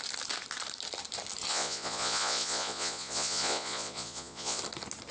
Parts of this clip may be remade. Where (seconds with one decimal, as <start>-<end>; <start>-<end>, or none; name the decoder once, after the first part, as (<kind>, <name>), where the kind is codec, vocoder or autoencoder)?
1.5-4.6 (vocoder, Vocos)